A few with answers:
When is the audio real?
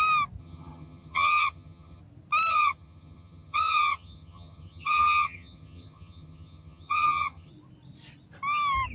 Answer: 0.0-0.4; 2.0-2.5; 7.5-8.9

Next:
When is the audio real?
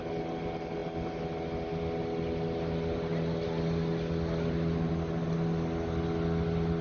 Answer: 0.0-6.8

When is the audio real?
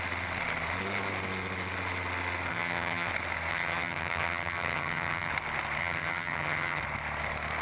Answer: 0.0-2.5; 3.1-3.5; 5.3-5.8; 6.8-7.6